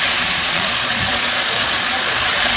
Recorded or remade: remade